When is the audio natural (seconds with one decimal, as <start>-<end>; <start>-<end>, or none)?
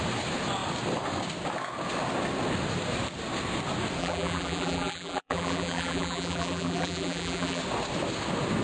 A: 0.0-4.0; 7.6-8.6